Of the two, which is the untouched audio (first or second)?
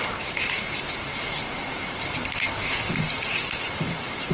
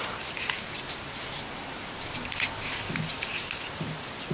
second